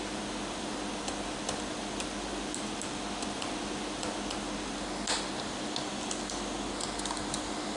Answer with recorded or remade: recorded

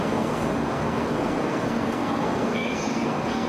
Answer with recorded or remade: remade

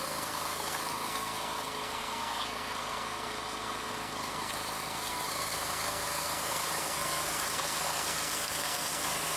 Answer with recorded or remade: remade